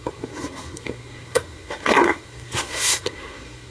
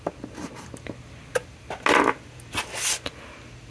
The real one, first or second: second